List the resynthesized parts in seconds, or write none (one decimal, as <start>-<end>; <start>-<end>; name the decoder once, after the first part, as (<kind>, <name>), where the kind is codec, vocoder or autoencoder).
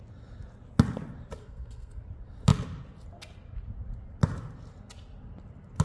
1.4-2.0 (codec, SNAC)